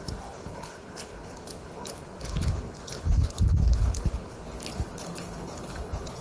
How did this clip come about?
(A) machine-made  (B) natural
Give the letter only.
A